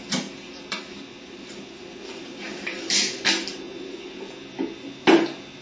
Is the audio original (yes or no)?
yes